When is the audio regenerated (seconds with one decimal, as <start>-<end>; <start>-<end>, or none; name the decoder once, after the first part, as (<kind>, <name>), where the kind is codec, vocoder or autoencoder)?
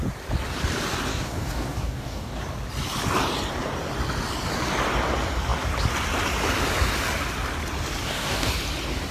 1.1-2.4 (codec, DAC); 8.0-8.5